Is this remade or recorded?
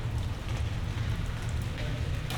recorded